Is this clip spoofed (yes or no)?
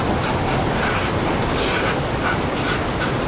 no